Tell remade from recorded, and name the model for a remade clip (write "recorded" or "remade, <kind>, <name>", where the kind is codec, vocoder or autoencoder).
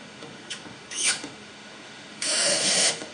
remade, autoencoder, DAC-VAE